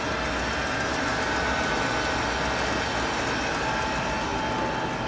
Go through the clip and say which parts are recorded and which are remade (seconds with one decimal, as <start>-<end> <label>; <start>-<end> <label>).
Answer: 0.0-5.1 recorded

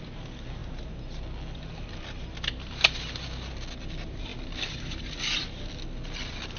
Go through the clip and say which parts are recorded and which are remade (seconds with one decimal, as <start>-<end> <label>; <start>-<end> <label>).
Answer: 0.0-6.6 recorded

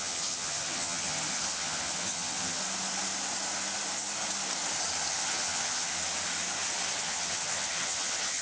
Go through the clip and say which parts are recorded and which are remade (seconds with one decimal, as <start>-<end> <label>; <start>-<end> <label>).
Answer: 0.0-2.6 remade; 2.6-5.1 recorded; 5.1-5.9 remade; 5.9-7.0 recorded; 7.0-8.4 remade

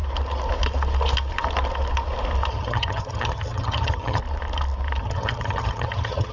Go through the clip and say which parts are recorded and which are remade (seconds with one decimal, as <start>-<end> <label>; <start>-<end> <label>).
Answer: 0.0-2.5 recorded; 2.5-4.2 remade; 4.2-5.0 recorded; 5.0-6.3 remade

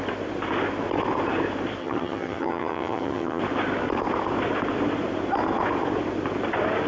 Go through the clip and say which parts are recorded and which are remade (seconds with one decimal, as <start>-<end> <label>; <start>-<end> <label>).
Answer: 0.0-1.8 recorded; 1.8-3.4 remade; 3.4-6.9 recorded

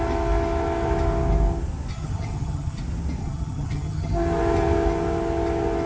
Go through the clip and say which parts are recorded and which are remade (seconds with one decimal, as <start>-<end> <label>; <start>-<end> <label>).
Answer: 0.0-1.9 recorded; 1.9-2.8 remade; 2.8-3.2 recorded; 3.2-4.1 remade; 4.1-5.9 recorded

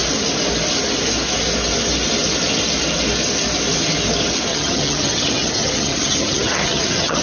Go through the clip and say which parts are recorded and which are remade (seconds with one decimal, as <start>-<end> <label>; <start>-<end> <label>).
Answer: 0.0-4.5 recorded; 4.5-7.2 remade

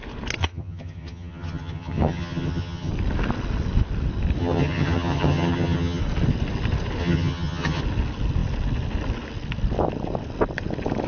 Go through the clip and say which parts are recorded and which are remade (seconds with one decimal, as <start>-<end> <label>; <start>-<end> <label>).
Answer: 0.0-0.4 recorded; 0.4-2.9 remade; 2.9-4.4 recorded; 4.4-6.0 remade; 6.0-7.0 recorded; 7.0-7.8 remade; 7.8-11.1 recorded